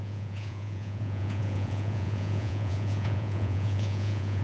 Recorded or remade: remade